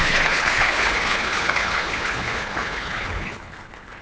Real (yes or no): no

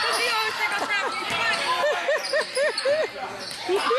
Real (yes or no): yes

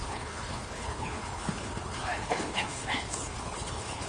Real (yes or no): no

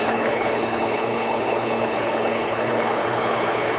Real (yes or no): no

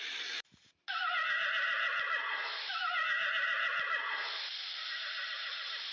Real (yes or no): yes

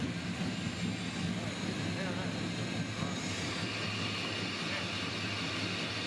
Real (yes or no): yes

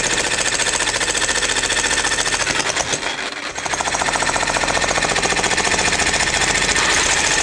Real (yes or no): yes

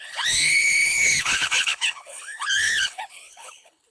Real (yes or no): no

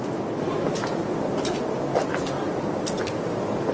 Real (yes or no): yes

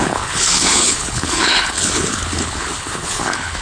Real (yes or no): no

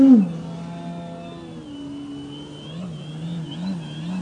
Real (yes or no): yes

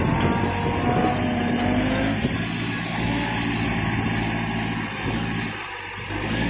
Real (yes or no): yes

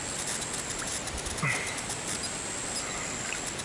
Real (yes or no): yes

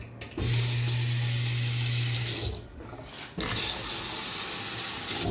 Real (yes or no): yes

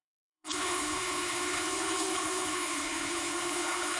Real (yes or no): no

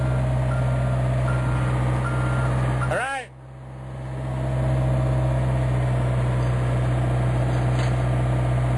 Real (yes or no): yes